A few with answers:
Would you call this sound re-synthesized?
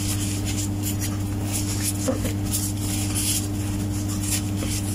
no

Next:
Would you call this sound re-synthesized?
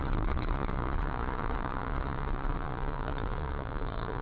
yes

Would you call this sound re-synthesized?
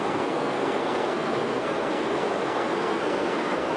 yes